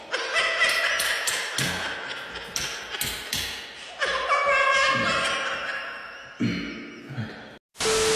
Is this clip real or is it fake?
real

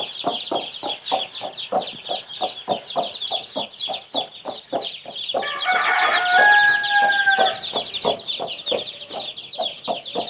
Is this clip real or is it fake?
real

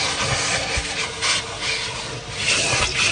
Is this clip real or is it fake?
real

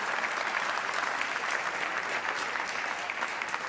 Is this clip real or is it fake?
real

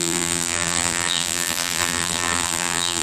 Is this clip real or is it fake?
fake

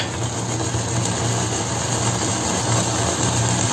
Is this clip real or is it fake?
real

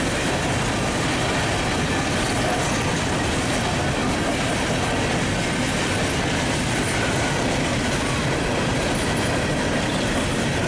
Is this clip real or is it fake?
real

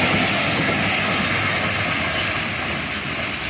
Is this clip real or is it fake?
real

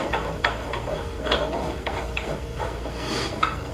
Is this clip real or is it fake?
fake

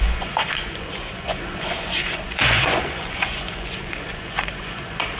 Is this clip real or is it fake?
fake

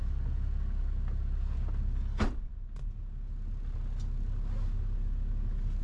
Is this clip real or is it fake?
real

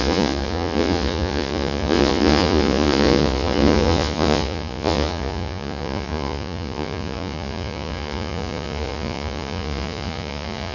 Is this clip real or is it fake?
fake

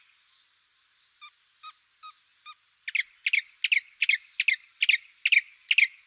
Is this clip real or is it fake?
real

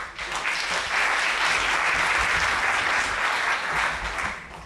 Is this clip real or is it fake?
real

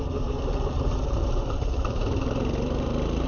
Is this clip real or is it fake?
fake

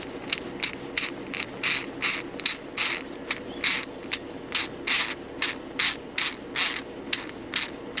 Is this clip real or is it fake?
real